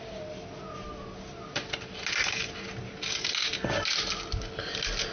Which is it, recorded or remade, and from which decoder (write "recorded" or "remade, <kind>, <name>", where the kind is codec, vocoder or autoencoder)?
recorded